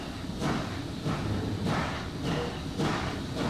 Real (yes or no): yes